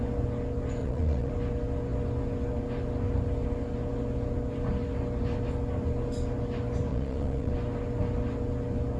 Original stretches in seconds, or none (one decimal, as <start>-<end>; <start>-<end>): 0.0-0.8; 1.3-6.9; 7.5-9.0